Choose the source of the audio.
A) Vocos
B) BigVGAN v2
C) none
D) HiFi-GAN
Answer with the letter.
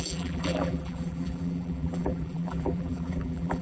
B